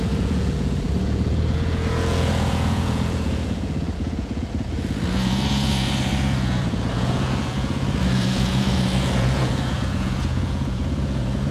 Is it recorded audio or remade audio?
remade